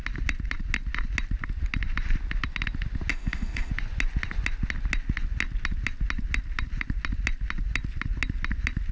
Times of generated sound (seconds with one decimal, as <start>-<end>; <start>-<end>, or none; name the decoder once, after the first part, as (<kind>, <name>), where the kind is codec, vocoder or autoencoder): 3.1-3.7 (autoencoder, DAC-VAE)

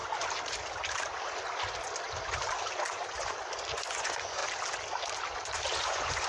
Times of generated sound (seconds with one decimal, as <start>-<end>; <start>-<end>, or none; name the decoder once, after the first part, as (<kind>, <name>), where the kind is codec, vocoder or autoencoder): 3.8-4.4 (vocoder, Vocos); 5.8-6.3

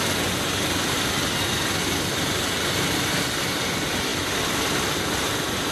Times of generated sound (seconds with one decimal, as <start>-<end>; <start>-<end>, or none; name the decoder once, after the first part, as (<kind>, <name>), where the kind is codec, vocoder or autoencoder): none

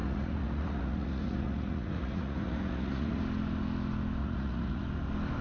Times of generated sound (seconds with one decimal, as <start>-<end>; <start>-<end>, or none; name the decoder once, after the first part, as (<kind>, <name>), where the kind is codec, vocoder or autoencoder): 0.0-3.2 (vocoder, Vocos); 4.2-4.8